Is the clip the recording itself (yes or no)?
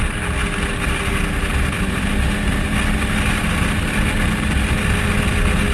yes